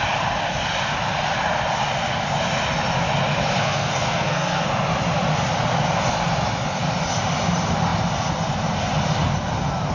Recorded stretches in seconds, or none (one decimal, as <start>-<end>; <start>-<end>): 0.0-3.6; 4.7-9.9